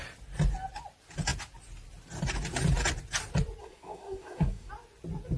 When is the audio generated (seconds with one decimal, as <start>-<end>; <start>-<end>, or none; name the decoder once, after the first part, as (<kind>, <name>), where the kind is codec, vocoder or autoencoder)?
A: 3.6-4.7 (codec, SNAC)